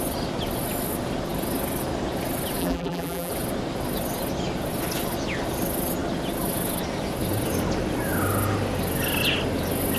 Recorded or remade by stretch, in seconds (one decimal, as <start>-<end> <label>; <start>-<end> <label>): 0.0-2.6 recorded; 2.6-3.3 remade; 3.3-10.0 recorded